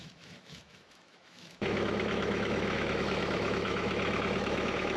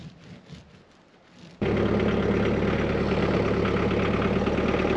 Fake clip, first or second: first